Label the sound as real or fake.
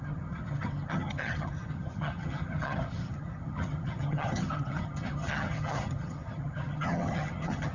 fake